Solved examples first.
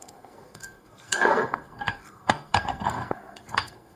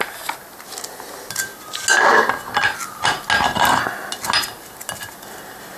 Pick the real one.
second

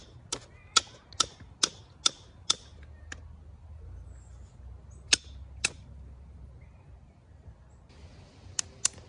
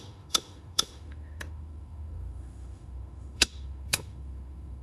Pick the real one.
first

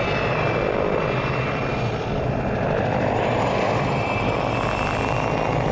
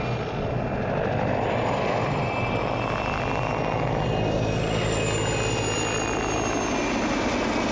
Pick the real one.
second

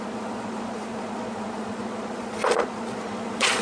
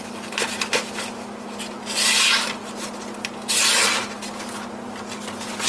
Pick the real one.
second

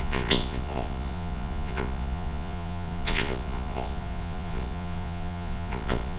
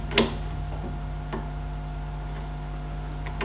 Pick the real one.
second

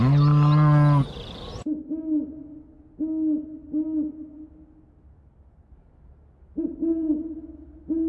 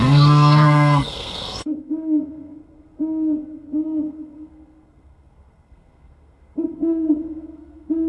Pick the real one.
first